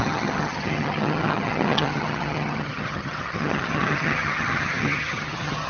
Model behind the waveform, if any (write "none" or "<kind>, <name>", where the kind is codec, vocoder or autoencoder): vocoder, HiFi-GAN